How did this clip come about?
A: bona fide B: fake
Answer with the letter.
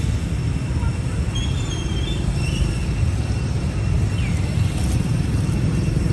A